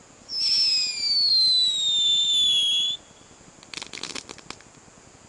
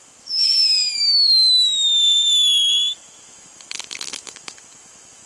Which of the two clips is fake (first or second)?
second